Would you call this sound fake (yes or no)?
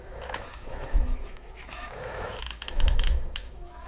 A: yes